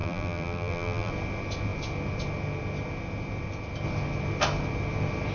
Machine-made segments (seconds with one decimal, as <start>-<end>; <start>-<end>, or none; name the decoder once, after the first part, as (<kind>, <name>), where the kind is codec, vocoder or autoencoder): 0.0-1.1 (vocoder, BigVGAN v2)